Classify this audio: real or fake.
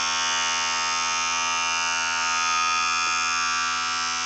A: real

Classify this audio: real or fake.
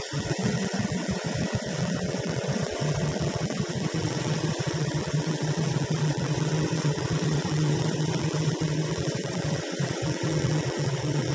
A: fake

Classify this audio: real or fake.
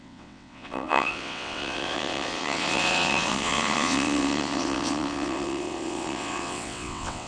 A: fake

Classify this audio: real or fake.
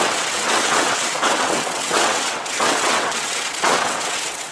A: fake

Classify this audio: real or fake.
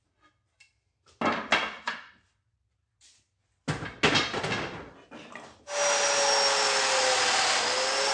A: real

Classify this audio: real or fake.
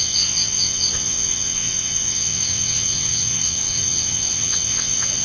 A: fake